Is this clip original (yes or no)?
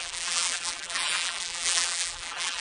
no